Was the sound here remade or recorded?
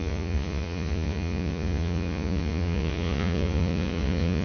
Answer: remade